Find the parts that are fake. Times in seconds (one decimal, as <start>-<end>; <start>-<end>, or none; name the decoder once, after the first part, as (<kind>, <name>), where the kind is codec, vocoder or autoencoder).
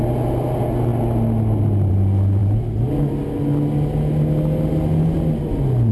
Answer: none